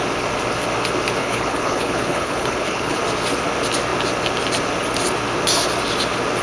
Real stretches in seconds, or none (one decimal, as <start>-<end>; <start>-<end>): 0.0-1.2; 3.0-6.4